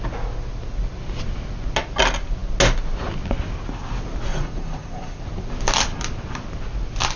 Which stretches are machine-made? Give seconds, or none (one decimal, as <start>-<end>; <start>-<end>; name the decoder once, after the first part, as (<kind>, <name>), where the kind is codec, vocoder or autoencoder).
4.3-5.2 (vocoder, Vocos)